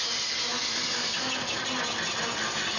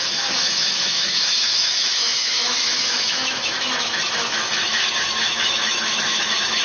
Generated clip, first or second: second